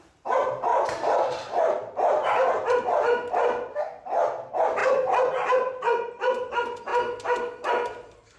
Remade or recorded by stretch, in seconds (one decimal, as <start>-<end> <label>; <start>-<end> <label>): 0.0-0.7 recorded; 0.7-2.5 remade; 2.5-8.4 recorded